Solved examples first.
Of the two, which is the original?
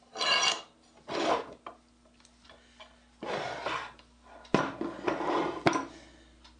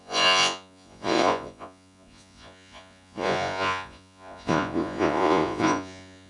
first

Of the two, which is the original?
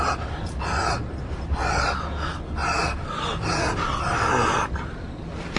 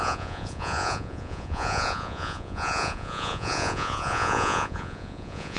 first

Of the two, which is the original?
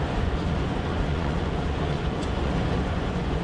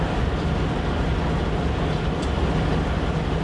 second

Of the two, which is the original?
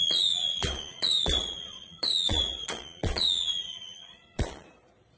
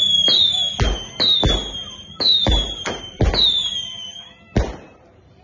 second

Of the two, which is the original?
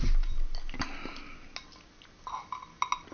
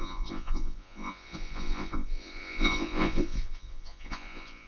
first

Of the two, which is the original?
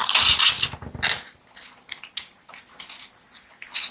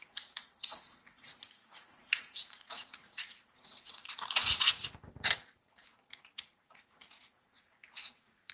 first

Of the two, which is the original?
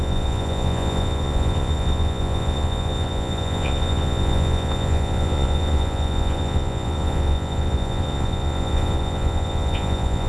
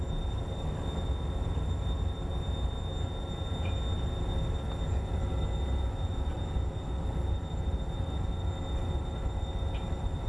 second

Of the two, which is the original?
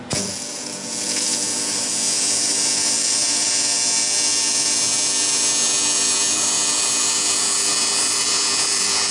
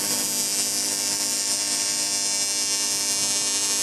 second